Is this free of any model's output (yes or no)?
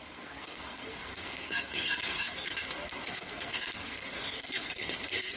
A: no